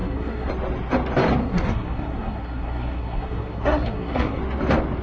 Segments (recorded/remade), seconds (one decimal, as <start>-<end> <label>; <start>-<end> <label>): 0.0-0.5 remade; 0.5-1.4 recorded; 1.4-4.4 remade; 4.4-5.0 recorded

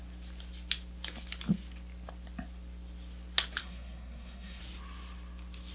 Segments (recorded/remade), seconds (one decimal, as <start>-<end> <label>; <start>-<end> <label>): 0.0-3.6 recorded; 3.6-4.6 remade; 4.6-5.7 recorded

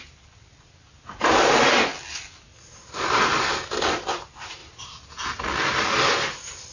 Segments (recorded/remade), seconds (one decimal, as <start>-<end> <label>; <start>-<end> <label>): 0.0-6.7 recorded

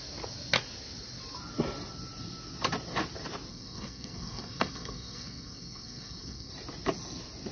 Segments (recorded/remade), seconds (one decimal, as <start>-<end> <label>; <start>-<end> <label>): 0.0-3.5 recorded; 3.5-6.5 remade; 6.5-7.5 recorded

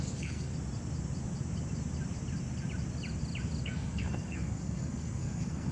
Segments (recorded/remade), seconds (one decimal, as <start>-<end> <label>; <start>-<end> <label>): 0.0-0.5 remade; 0.5-3.6 recorded; 3.6-5.7 remade